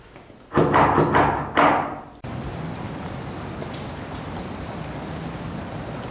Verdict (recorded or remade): recorded